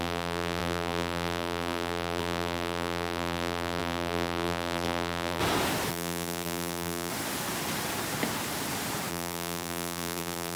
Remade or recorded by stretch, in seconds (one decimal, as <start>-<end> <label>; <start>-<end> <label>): 0.0-5.4 remade; 5.4-5.9 recorded; 5.9-7.1 remade; 7.1-9.1 recorded; 9.1-10.6 remade